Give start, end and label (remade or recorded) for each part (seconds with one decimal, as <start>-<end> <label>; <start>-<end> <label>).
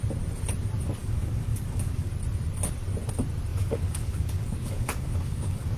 0.0-1.0 recorded; 1.0-2.1 remade; 2.1-3.5 recorded; 3.5-5.8 remade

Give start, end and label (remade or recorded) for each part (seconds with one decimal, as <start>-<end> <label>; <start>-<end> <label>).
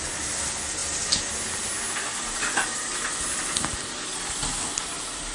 0.0-5.3 recorded